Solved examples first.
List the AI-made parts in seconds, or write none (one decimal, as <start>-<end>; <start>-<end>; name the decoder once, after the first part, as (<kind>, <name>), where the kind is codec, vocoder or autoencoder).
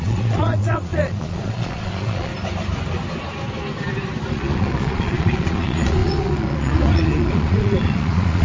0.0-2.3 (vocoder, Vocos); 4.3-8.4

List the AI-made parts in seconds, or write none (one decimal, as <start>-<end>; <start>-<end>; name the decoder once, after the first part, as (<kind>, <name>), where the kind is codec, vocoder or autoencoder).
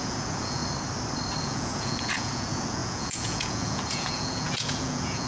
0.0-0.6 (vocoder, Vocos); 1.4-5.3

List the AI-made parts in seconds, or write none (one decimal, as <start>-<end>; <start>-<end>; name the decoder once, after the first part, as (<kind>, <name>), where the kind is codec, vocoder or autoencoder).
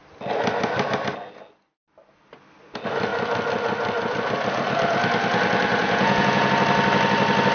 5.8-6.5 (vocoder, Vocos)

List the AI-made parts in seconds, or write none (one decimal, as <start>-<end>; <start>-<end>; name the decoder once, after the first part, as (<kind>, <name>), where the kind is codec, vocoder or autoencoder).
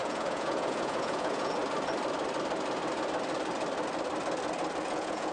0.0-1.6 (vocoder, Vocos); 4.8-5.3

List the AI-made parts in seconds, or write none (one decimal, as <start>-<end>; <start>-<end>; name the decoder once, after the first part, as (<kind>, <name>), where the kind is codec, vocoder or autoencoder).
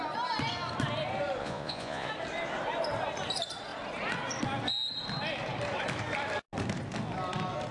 1.4-2.1 (vocoder, Vocos)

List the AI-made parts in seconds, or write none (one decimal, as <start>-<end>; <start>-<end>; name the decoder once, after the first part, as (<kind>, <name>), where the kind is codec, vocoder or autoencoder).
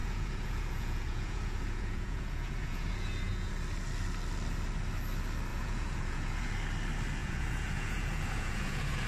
0.0-3.5 (vocoder, Vocos); 5.5-6.5; 7.2-9.1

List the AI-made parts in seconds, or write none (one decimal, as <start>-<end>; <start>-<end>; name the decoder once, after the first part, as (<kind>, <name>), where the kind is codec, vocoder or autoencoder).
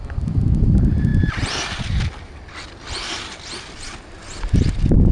none